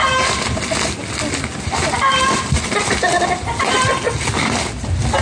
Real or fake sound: real